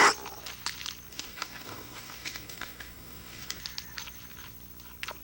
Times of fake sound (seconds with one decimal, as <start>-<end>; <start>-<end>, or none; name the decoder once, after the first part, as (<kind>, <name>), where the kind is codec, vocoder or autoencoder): 1.1-3.6 (codec, DAC)